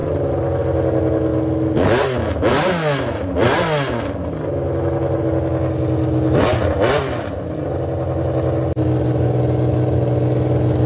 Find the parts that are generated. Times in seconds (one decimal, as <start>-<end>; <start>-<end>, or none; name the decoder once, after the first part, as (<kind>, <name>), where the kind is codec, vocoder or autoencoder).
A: none